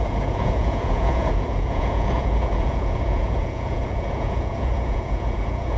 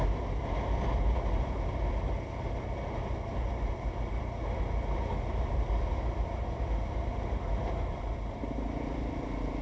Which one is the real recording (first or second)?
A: second